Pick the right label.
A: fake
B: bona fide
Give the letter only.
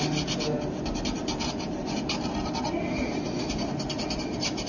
B